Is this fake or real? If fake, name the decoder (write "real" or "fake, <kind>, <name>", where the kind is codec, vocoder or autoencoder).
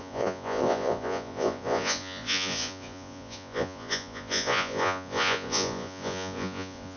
fake, vocoder, Vocos